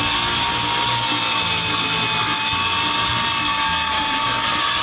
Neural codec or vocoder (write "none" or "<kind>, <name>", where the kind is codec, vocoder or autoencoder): none